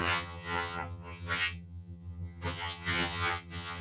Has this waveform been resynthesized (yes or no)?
yes